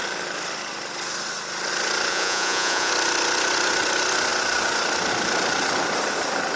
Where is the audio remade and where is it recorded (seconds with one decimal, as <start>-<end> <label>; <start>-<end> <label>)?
0.0-2.1 recorded; 2.1-2.9 remade; 2.9-6.6 recorded